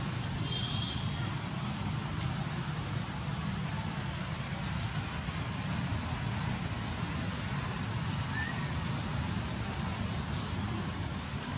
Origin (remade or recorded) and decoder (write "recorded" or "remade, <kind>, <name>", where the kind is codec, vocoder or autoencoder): recorded